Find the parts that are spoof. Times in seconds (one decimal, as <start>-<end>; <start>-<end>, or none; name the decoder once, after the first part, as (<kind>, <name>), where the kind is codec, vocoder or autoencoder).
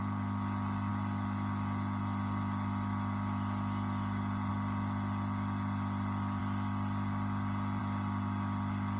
none